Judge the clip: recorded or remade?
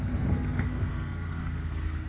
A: remade